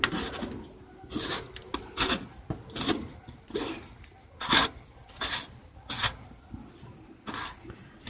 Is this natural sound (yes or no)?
yes